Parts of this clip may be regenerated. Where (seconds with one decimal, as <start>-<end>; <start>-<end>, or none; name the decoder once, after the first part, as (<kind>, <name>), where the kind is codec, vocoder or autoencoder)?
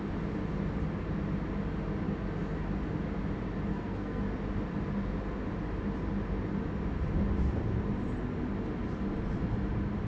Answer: 3.7-4.2 (codec, SNAC)